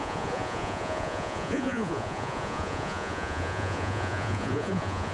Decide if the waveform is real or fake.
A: fake